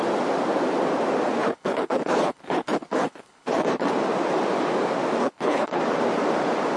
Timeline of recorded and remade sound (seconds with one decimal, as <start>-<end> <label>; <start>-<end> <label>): 0.0-1.4 recorded; 1.4-3.9 remade; 3.9-5.2 recorded; 5.2-5.8 remade; 5.8-6.8 recorded